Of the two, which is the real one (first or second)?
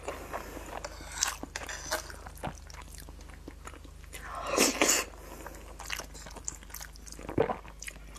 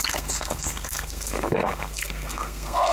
first